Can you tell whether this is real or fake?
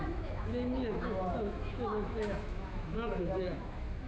fake